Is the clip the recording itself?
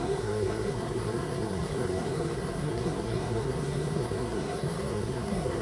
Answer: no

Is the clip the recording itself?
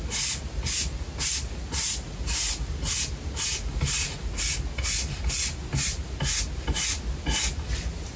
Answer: yes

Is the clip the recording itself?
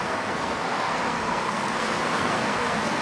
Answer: no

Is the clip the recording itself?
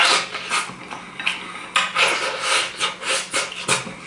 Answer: yes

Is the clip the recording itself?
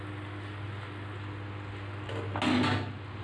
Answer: yes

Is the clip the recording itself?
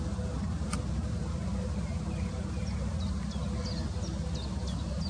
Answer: yes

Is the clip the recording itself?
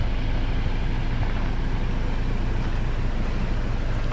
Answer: yes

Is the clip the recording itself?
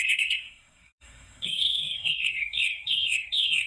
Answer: no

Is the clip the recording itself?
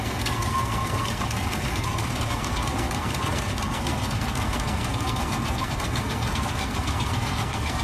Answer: no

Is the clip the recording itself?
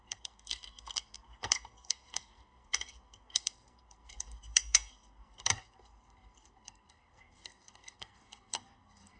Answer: no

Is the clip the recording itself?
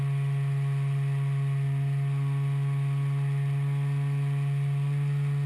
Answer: yes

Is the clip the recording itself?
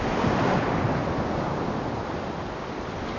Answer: yes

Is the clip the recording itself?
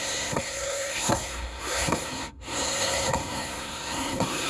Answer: no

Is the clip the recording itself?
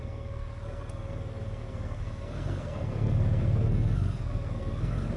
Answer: no